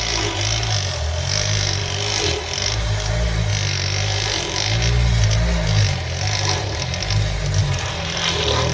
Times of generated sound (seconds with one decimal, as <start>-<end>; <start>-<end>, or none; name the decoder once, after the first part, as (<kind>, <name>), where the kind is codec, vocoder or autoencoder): none